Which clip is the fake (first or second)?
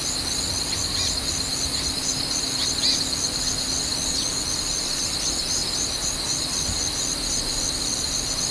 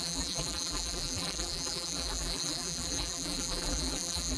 second